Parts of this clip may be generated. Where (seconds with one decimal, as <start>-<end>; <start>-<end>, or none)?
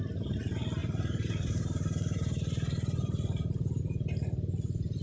0.8-3.8